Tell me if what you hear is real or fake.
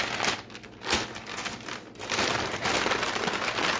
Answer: real